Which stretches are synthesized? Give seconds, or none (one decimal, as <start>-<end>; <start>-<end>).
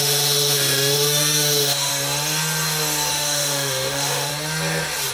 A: 0.0-1.9; 3.1-4.3